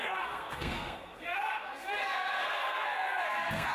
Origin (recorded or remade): remade